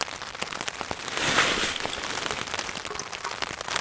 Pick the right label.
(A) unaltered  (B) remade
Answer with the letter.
A